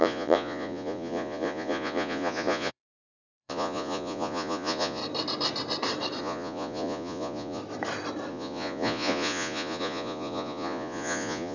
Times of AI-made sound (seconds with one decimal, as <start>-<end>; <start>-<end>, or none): 0.0-5.0; 6.2-7.6; 8.3-11.5